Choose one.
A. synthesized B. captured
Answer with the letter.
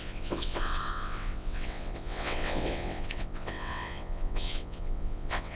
A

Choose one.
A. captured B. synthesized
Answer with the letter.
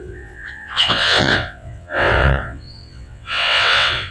B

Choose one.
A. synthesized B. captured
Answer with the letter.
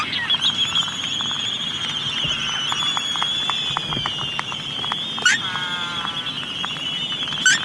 B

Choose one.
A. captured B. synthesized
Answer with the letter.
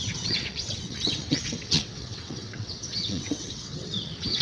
B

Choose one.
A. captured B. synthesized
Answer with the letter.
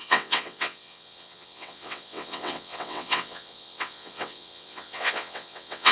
B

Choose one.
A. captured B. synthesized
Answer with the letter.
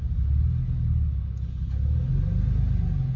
A